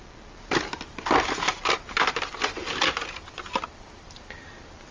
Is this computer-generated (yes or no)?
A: no